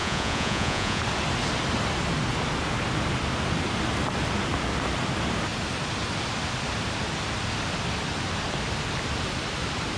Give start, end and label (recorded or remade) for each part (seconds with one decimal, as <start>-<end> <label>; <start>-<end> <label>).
0.0-1.0 remade; 1.0-10.0 recorded